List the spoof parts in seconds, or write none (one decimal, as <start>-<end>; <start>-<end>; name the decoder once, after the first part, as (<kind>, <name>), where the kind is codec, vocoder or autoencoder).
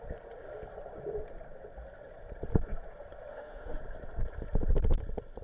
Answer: 3.3-3.8 (autoencoder, DAC-VAE)